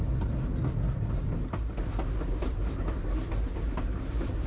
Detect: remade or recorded recorded